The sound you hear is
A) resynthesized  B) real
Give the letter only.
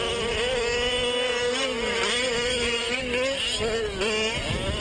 B